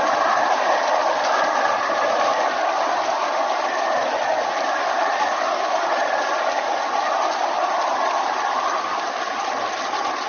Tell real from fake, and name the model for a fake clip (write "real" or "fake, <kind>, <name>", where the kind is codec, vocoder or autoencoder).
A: real